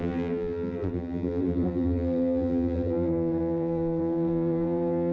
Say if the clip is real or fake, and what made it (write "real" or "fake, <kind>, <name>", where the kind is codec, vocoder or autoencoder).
fake, vocoder, BigVGAN v2